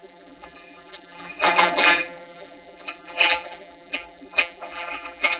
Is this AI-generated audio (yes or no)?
yes